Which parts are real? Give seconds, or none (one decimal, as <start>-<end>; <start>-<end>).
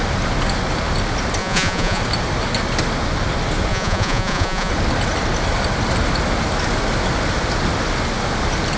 0.0-1.4; 2.0-3.7; 4.7-8.8